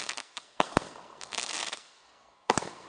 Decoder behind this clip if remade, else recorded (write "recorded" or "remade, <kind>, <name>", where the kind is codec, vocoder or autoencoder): remade, codec, SNAC